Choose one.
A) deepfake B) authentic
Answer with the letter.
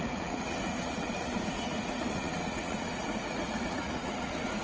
A